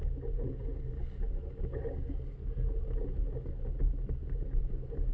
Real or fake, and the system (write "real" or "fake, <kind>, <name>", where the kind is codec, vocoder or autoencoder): real